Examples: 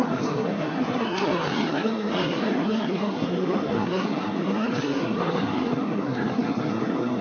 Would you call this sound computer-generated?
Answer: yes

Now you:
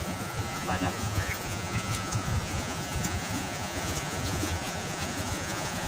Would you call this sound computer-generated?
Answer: yes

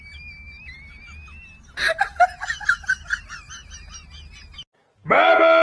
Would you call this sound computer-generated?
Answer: no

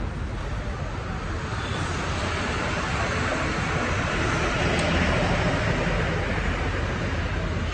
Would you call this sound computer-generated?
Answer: no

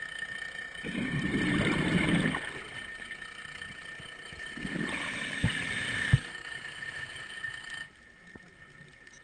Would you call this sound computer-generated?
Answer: no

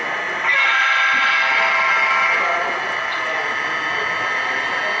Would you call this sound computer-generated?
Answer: no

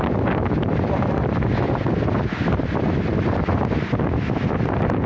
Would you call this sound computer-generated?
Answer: no